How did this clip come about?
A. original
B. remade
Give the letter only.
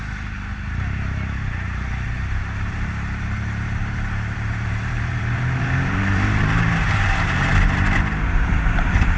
B